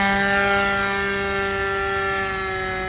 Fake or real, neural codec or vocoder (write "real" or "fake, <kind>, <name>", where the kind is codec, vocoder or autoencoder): real